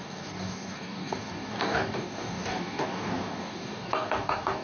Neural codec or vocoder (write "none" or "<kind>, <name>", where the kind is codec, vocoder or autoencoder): codec, DAC